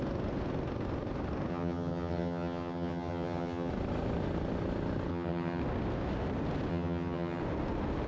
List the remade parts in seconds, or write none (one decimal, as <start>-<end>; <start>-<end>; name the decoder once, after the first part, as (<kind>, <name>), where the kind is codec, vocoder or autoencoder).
1.5-3.7 (vocoder, HiFi-GAN); 5.1-5.6; 6.7-7.4